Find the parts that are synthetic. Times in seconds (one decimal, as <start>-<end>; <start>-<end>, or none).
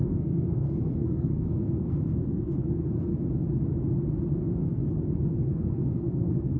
0.0-3.1; 4.3-4.8; 5.3-6.6